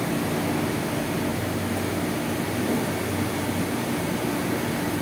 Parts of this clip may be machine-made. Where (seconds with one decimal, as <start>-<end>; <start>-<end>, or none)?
none